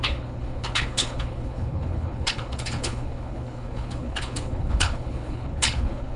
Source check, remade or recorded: remade